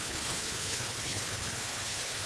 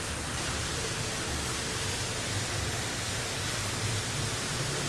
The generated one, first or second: first